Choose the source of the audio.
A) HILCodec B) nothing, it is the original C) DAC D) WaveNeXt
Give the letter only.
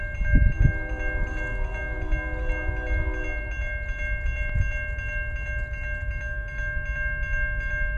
B